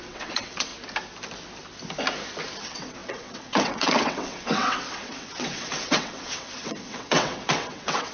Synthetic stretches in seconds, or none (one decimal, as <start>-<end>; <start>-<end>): 0.0-0.7; 2.6-8.1